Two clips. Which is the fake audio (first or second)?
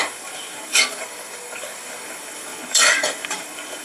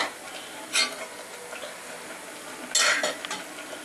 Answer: first